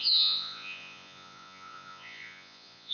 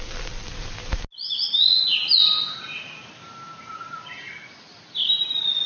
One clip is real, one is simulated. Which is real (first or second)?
second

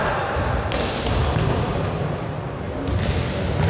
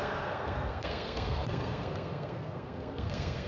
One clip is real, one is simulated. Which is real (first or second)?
first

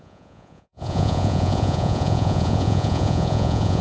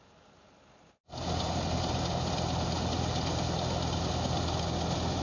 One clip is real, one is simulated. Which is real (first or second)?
second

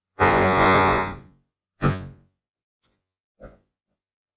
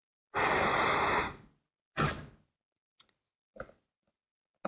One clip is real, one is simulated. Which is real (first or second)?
second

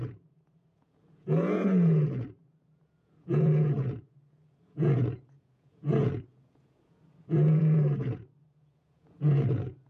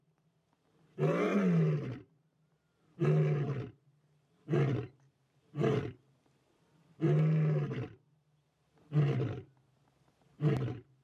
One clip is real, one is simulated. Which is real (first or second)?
second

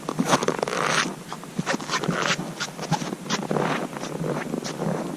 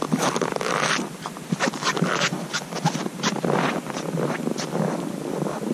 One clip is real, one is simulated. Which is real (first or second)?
first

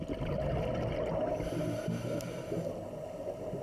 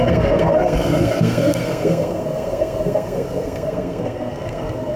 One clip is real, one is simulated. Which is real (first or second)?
first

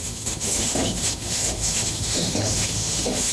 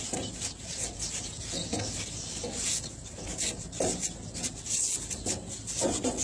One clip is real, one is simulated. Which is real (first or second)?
second